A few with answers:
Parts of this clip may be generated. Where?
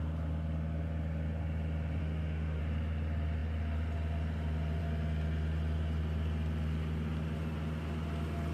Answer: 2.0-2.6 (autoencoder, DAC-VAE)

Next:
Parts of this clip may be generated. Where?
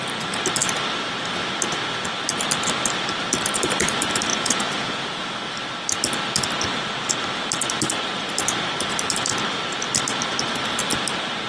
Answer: 4.3-5.2 (vocoder, Vocos)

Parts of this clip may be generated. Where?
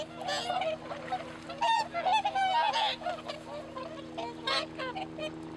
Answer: none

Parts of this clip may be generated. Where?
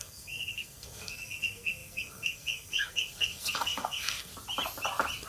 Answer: 0.0-4.3 (codec, SNAC)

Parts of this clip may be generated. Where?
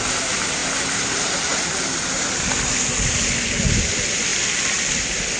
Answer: 0.6-2.4 (vocoder, BigVGAN v2)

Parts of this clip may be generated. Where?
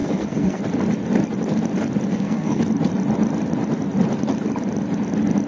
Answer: 0.0-0.6 (codec, SNAC); 2.1-2.6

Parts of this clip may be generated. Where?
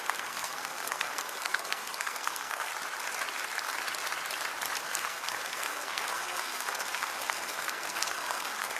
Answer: 0.0-2.7 (codec, SNAC); 4.8-8.8